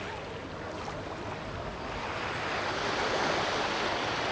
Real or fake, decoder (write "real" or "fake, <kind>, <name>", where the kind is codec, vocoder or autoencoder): real